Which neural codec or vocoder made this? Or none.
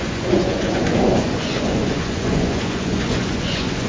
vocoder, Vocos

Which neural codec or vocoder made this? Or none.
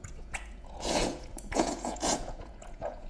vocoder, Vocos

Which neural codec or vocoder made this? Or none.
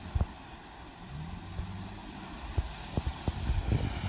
none